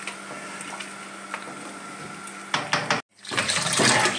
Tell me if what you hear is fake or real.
real